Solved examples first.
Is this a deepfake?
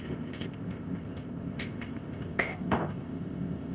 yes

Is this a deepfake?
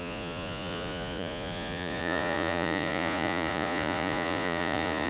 yes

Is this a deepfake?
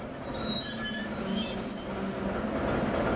no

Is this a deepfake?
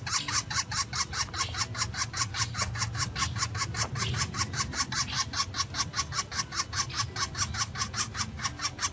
no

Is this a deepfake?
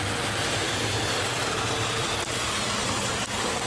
no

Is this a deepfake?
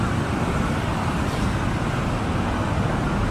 no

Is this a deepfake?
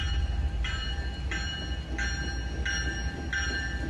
no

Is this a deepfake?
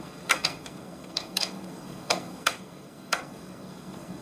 yes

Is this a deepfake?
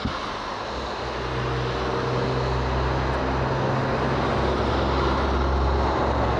no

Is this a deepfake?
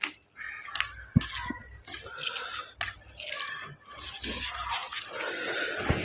no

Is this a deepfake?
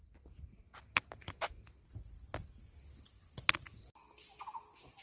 no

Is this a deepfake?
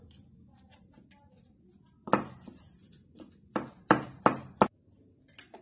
no